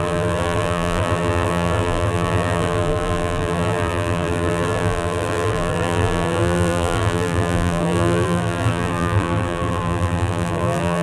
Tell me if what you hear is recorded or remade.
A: remade